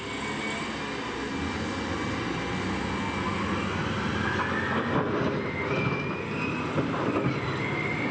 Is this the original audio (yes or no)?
yes